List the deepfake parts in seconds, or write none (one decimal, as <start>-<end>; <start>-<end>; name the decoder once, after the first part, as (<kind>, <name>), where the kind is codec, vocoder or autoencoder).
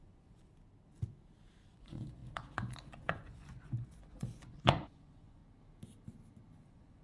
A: 0.0-0.5 (vocoder, Vocos); 1.7-5.4; 6.6-7.0